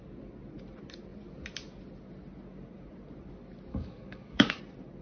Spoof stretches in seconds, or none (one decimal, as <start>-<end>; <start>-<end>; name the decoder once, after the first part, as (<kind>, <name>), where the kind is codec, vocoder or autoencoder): 3.7-4.6 (codec, DAC)